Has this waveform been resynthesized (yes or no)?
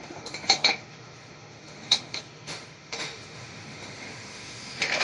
yes